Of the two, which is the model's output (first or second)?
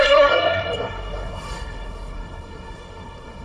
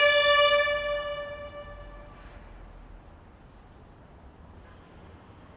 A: first